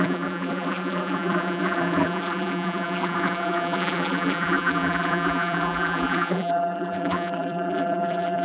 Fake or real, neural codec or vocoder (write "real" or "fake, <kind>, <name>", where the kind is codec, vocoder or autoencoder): fake, vocoder, BigVGAN v2